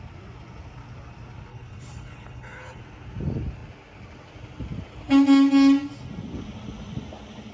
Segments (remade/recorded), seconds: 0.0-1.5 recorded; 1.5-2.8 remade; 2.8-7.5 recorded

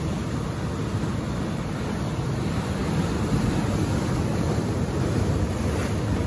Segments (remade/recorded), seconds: 0.0-0.8 recorded; 0.8-2.3 remade; 2.3-6.3 recorded

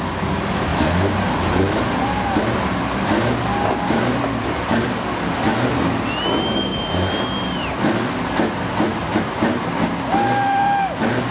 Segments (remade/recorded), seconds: 0.0-11.3 recorded

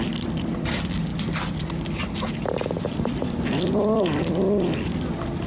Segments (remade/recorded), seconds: 0.0-1.1 remade; 1.1-2.8 recorded; 2.8-5.5 remade

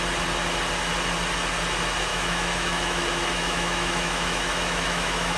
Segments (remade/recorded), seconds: 0.0-2.1 recorded; 2.1-5.4 remade

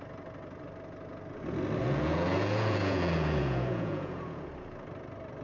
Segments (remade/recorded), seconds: 0.0-1.8 recorded; 1.8-4.5 remade; 4.5-5.4 recorded

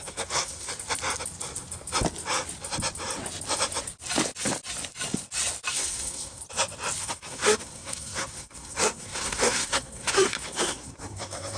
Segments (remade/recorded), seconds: 0.0-0.7 remade; 0.7-5.7 recorded; 5.7-6.4 remade; 6.4-7.0 recorded; 7.0-11.6 remade

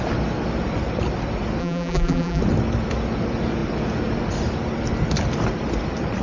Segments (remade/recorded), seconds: 0.0-1.6 recorded; 1.6-2.4 remade; 2.4-6.2 recorded